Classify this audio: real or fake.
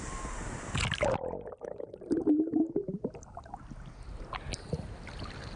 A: real